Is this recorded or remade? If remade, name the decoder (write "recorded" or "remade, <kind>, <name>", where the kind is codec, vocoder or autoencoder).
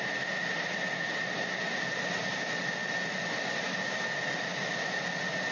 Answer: recorded